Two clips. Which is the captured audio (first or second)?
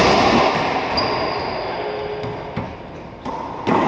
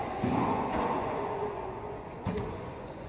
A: first